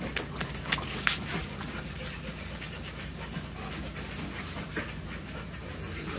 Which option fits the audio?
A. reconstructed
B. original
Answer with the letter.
B